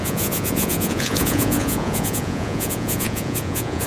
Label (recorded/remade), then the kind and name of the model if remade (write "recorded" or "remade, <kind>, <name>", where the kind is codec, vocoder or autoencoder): remade, vocoder, Vocos